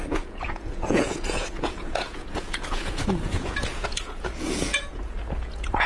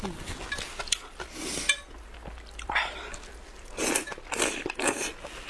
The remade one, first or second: first